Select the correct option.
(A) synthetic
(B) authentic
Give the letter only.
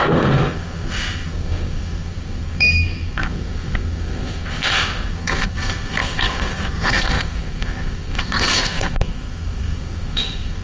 A